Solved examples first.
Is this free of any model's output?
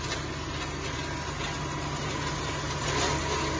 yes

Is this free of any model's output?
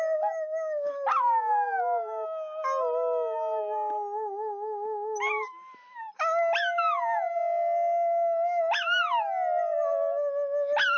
yes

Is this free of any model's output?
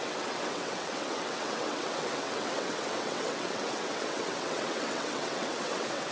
no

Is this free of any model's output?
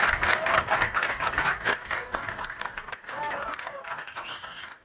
no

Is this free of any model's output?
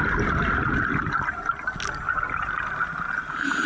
yes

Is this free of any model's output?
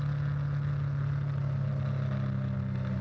yes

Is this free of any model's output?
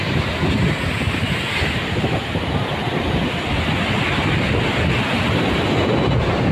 yes